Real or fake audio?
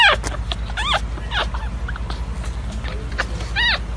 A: real